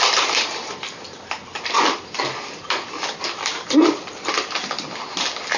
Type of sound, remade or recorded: recorded